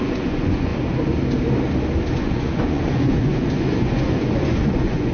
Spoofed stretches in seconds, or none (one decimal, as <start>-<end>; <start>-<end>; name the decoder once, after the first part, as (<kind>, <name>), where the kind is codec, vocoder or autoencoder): 0.0-0.7 (vocoder, Vocos); 2.2-5.1

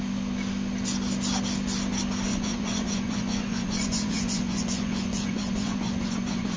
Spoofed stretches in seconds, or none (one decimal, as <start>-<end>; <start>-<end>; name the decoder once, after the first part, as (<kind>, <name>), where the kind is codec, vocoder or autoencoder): 2.3-6.6 (vocoder, Vocos)

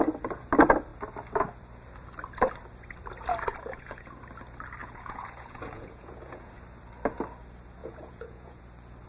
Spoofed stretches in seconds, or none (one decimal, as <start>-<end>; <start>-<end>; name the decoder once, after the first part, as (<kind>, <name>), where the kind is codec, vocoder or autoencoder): 3.5-4.2 (vocoder, Vocos); 4.8-6.5; 7.8-8.6

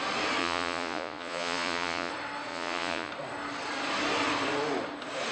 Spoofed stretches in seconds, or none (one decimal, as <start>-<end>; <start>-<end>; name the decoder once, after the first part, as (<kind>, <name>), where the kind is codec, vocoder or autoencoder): 0.4-2.1 (vocoder, Vocos); 2.5-3.1

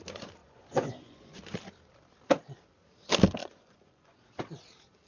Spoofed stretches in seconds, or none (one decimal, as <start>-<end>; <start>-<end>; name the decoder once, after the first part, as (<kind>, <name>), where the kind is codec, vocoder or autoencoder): 0.4-1.4 (vocoder, Vocos); 3.4-4.2